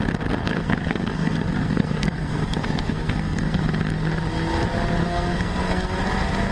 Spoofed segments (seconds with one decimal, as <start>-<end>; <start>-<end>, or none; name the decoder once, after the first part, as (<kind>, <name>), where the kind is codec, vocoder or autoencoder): 0.4-3.6 (codec, SNAC); 5.0-6.0